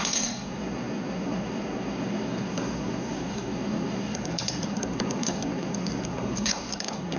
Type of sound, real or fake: fake